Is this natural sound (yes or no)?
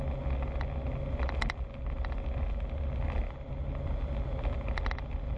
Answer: yes